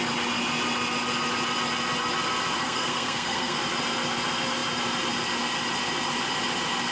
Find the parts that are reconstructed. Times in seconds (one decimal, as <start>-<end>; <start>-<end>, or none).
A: 2.6-3.6